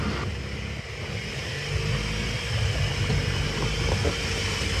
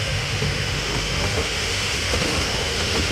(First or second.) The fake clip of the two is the second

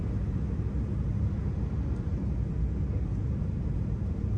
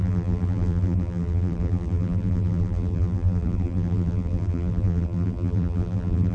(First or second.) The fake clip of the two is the second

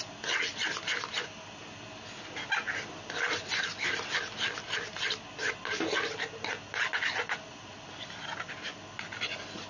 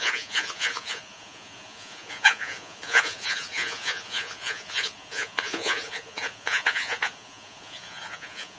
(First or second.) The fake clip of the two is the second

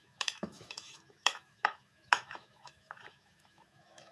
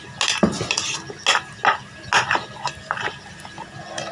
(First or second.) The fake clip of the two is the first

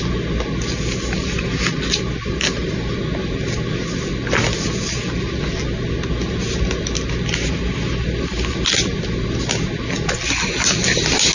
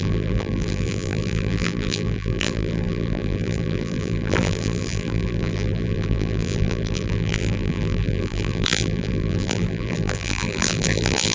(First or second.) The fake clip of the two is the second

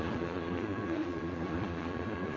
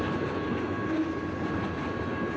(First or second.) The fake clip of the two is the first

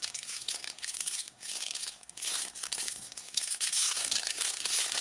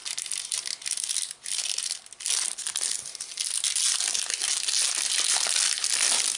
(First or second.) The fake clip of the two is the first